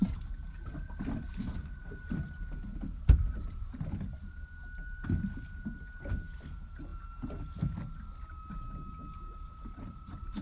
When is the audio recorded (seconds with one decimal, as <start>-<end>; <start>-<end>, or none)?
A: 0.0-10.4